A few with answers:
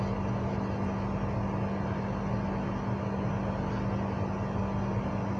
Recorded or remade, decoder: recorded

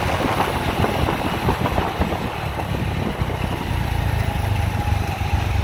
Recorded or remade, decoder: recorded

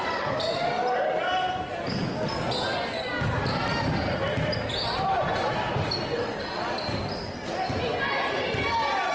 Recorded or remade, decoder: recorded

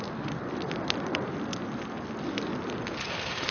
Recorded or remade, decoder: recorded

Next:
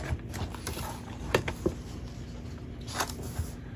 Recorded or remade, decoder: recorded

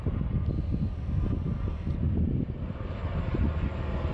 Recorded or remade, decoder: recorded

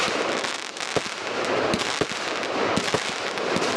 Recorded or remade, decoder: recorded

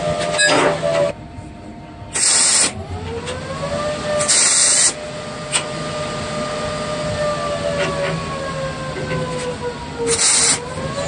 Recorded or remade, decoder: recorded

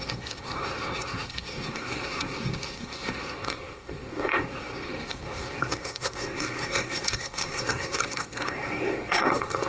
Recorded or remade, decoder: remade, codec, SNAC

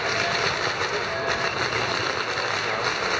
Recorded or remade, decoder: recorded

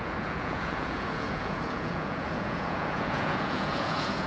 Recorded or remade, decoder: remade, vocoder, Vocos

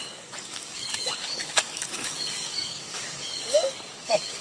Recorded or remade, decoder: remade, codec, DAC